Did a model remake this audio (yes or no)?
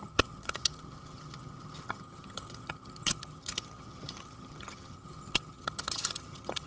yes